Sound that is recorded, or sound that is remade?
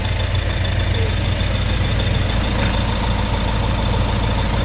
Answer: recorded